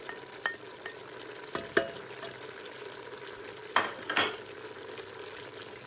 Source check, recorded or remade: recorded